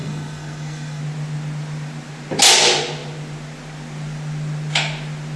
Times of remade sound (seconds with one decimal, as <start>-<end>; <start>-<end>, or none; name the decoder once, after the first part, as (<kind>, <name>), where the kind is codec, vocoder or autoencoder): 0.0-1.0 (codec, SNAC)